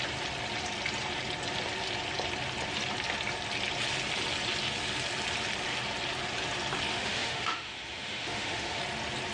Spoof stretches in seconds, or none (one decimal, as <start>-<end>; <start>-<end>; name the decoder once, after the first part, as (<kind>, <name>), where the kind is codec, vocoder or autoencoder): 6.9-8.8 (autoencoder, DAC-VAE)